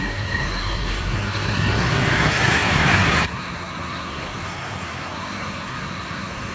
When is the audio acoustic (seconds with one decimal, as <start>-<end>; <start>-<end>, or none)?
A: none